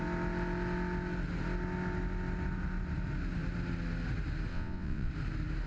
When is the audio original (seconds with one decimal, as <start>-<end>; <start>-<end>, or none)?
0.0-4.5; 5.1-5.7